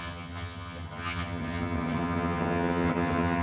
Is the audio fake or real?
fake